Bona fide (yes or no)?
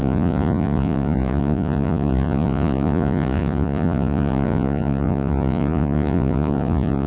no